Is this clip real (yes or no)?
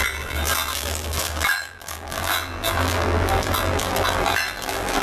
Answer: no